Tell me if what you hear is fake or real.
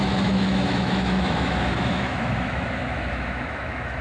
fake